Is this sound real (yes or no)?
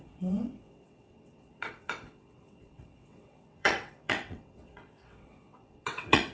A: no